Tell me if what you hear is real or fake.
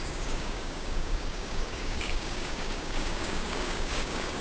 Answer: fake